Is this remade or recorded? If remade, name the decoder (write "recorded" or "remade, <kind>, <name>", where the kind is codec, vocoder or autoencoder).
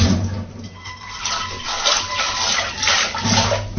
recorded